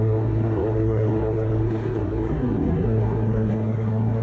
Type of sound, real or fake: fake